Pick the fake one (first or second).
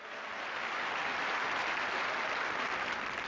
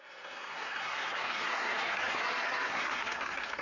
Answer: second